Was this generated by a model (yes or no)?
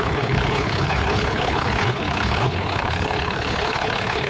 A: yes